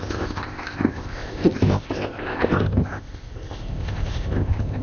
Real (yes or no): no